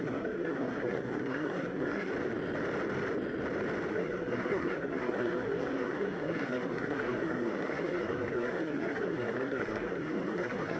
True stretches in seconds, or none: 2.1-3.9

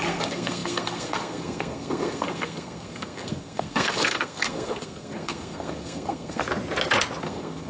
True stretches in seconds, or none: 6.4-7.2

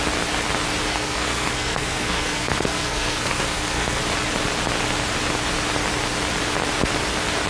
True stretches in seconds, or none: 0.0-0.9; 4.0-7.5

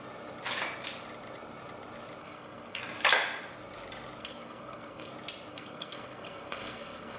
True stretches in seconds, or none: 0.0-2.2; 2.8-4.2; 5.1-5.5